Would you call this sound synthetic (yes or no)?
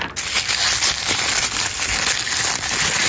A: no